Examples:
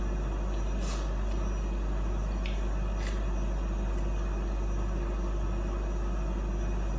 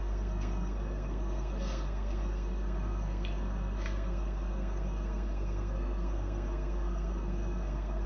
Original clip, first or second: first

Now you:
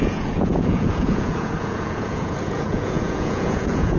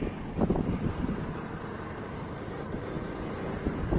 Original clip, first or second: second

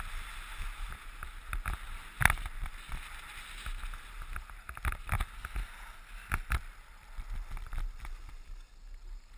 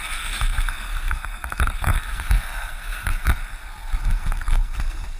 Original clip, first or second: first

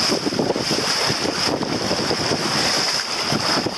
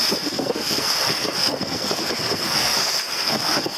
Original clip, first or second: first